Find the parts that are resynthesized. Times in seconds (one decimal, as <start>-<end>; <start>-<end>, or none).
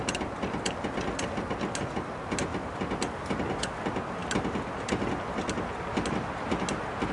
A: none